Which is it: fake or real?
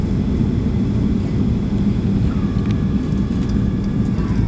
real